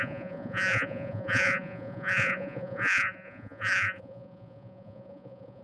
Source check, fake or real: fake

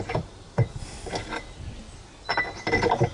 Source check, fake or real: real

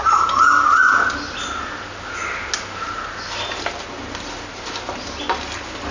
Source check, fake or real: real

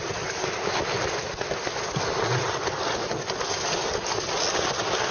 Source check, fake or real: real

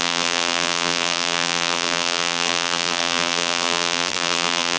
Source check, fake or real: fake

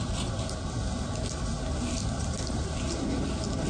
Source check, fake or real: real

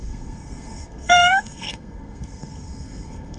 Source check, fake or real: fake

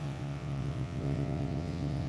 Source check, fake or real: fake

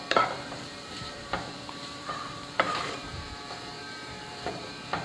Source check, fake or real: fake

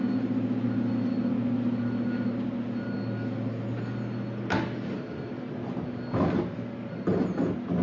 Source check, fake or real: real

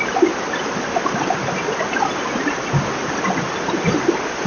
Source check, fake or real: real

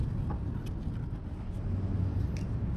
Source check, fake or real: real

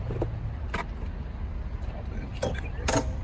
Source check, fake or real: real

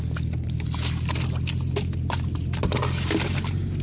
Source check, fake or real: real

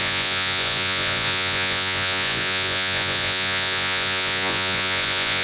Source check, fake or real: fake